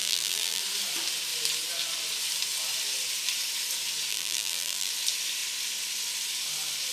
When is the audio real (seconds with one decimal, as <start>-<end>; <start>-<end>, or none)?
0.6-4.1; 4.9-6.9